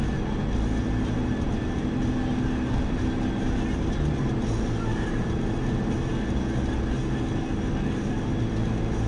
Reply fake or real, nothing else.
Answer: real